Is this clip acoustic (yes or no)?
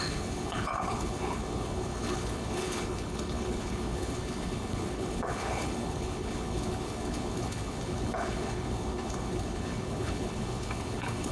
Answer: no